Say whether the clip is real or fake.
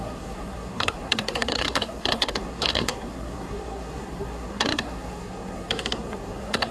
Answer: fake